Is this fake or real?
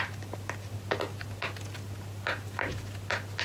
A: real